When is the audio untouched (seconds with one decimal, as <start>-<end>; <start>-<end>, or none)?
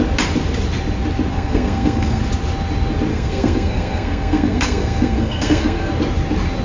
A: 0.0-1.3; 2.2-3.1; 5.9-6.6